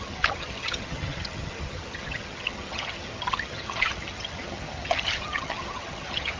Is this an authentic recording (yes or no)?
no